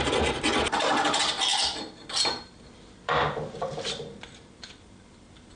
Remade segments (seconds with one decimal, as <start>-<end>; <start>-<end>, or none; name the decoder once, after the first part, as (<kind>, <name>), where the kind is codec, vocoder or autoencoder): 1.5-4.2 (vocoder, BigVGAN v2)